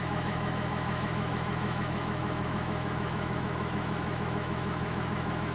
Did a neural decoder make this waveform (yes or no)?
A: yes